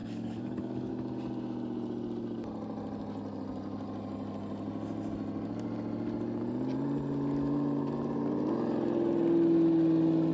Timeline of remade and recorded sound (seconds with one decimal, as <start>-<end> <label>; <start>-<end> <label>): 0.0-0.9 remade; 0.9-10.3 recorded